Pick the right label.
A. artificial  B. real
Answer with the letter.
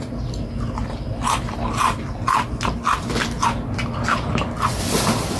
B